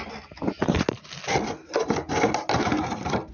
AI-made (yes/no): no